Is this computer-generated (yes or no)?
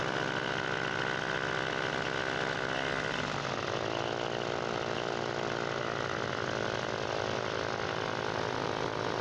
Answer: no